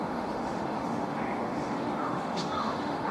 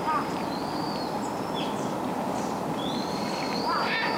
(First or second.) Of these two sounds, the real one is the second